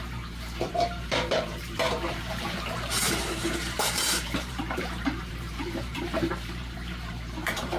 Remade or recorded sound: remade